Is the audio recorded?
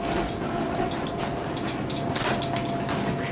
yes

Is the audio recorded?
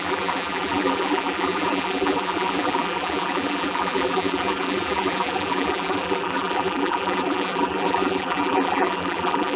no